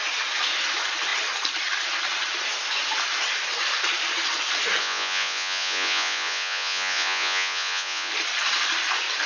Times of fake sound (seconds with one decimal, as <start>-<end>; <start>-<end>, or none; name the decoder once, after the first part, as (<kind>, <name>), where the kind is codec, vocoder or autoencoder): 4.8-8.1 (vocoder, Vocos)